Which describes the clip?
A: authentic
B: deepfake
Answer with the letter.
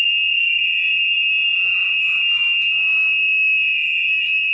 A